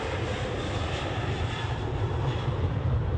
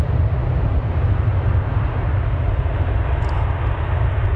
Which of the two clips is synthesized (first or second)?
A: first